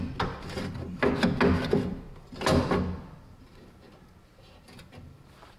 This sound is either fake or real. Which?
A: real